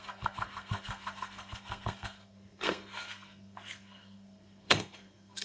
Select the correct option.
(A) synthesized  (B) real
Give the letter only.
A